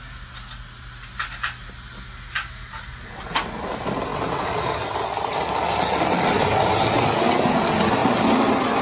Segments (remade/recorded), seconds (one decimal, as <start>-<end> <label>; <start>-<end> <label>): 0.0-8.8 recorded